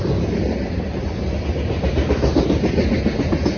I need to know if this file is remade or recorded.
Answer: recorded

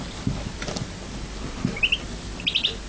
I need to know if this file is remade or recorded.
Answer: recorded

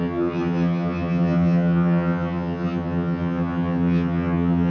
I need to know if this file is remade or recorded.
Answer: remade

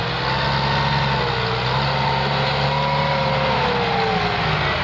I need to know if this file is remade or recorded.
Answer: recorded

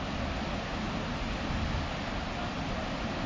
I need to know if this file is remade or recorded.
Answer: recorded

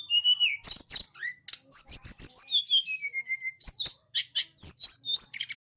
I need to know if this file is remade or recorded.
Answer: recorded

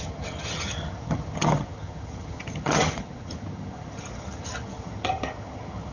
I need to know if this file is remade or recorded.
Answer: remade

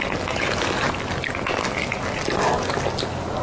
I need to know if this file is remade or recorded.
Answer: recorded